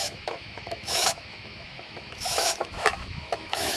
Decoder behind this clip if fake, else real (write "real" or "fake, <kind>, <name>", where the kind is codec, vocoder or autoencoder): fake, autoencoder, DAC-VAE